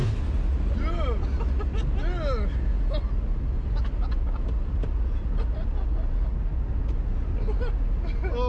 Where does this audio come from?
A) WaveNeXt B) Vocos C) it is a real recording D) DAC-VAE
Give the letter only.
C